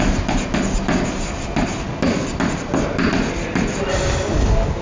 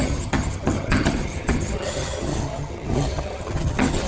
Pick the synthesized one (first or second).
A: second